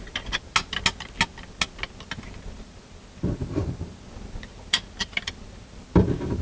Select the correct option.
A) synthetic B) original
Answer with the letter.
B